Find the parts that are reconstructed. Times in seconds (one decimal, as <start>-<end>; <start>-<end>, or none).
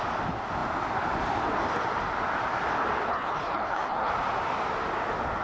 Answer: 3.1-4.1